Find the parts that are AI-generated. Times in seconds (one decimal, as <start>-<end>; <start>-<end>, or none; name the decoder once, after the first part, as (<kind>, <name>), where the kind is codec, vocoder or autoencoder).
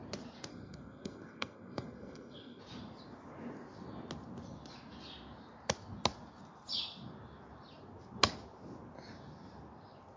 0.5-2.6 (codec, SNAC)